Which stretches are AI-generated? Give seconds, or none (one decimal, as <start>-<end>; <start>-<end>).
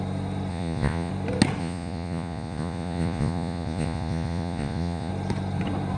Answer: 0.5-1.1; 1.6-5.1